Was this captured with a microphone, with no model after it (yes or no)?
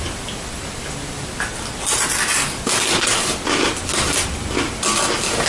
yes